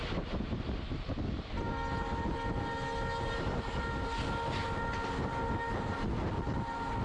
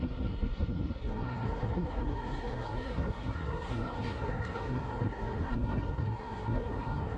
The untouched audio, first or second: first